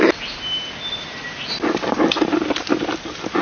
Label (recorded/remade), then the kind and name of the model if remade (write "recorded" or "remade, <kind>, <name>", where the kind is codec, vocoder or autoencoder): recorded